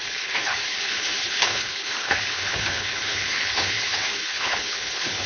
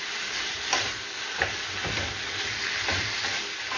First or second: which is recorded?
second